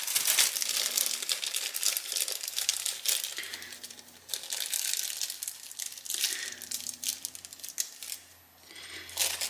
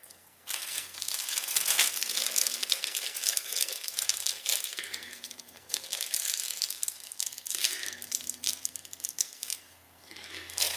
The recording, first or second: first